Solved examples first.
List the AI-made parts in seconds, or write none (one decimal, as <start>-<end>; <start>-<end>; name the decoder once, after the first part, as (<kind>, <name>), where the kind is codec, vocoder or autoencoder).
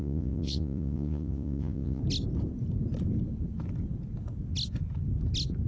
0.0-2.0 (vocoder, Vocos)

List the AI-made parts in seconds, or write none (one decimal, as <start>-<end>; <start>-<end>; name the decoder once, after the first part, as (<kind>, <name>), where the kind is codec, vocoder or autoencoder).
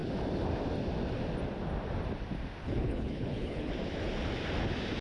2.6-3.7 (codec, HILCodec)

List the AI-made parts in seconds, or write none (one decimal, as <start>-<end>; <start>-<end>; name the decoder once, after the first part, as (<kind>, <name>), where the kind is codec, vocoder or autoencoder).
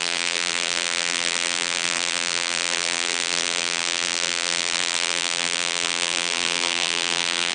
0.0-7.5 (vocoder, BigVGAN v2)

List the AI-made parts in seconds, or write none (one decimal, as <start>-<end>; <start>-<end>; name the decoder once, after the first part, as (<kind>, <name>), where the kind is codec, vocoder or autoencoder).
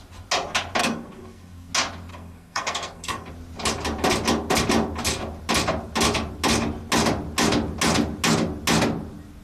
0.8-1.7 (codec, SNAC); 2.1-3.3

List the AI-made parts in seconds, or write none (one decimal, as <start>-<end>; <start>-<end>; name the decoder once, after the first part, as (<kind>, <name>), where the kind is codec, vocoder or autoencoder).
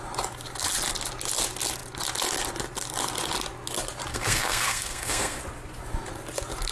4.1-5.4 (codec, SNAC)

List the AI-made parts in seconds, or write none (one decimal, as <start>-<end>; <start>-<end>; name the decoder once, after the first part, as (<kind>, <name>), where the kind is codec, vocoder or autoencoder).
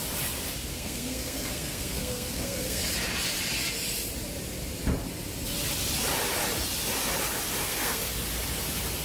0.7-2.8 (codec, SNAC); 7.6-8.1